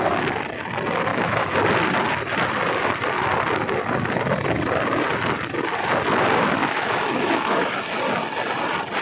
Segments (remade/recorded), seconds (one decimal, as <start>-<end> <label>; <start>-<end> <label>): 0.0-1.1 recorded; 1.1-1.6 remade; 1.6-6.6 recorded; 6.6-7.8 remade; 7.8-9.0 recorded